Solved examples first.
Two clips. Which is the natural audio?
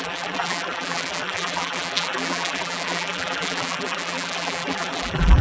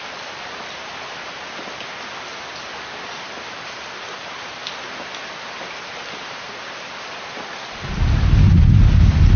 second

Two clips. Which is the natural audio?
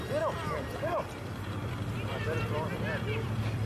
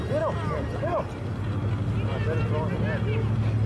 second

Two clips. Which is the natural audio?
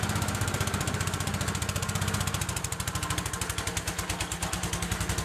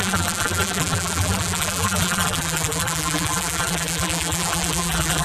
first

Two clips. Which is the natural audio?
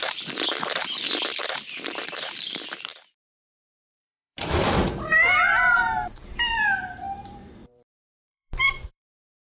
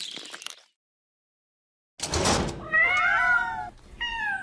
second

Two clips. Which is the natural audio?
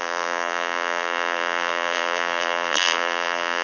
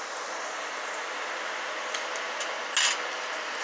second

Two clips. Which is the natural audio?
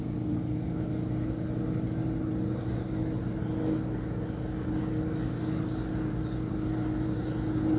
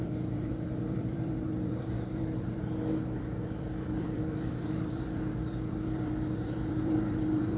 first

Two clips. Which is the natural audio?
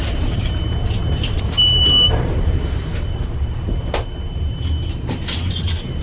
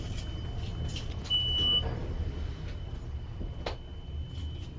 second